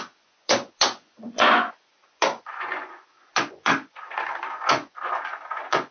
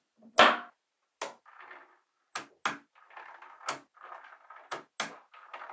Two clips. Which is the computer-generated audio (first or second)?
first